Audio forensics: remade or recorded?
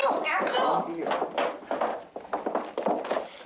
recorded